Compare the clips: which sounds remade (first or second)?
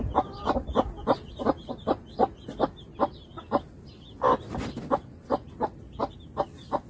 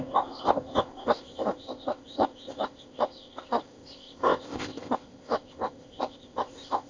second